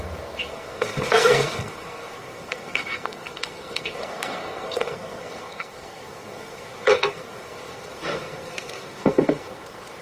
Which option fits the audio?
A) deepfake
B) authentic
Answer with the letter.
A